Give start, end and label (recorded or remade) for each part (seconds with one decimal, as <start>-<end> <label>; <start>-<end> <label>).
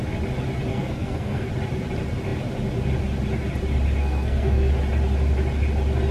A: 0.0-0.7 recorded; 0.7-1.5 remade; 1.5-4.0 recorded; 4.0-4.7 remade; 4.7-6.1 recorded